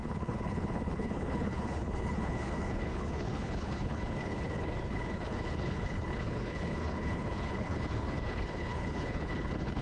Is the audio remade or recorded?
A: remade